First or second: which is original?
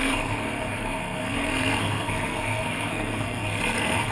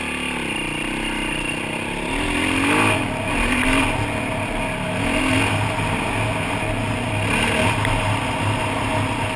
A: second